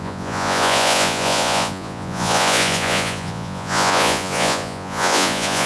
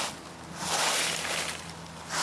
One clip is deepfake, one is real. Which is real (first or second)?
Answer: second